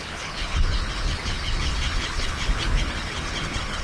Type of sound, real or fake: fake